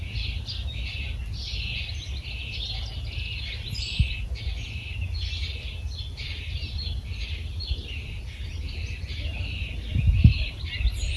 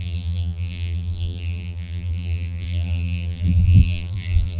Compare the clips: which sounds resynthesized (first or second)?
second